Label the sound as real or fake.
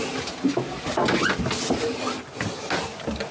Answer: real